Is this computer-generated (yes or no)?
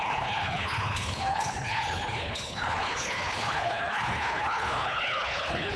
yes